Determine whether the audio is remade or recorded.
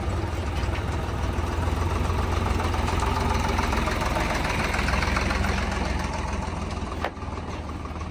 recorded